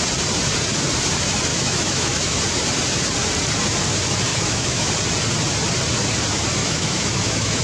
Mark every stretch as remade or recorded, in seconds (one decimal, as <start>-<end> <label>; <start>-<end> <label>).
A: 0.0-1.5 recorded; 1.5-2.4 remade; 2.4-4.3 recorded; 4.3-4.9 remade; 4.9-6.6 recorded; 6.6-7.6 remade